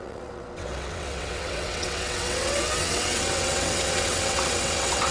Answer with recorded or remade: remade